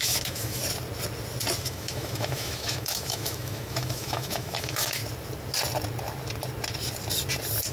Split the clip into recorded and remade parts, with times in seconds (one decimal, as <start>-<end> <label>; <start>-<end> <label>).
0.0-0.6 remade; 0.6-1.6 recorded; 1.6-5.0 remade; 5.0-7.7 recorded